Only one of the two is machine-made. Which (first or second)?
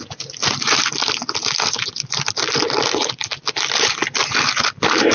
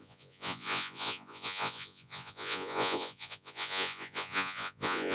second